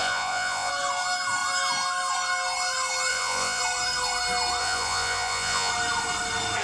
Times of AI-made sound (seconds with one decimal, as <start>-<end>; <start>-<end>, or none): 0.0-0.7; 3.1-3.6; 4.6-5.7